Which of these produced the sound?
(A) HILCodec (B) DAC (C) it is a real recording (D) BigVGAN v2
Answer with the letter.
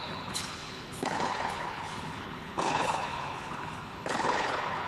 A